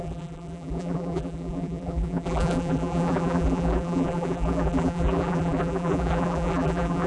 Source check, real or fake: fake